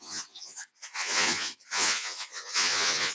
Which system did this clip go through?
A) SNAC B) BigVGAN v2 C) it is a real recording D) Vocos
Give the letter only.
D